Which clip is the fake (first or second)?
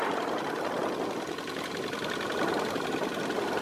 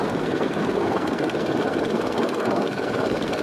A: second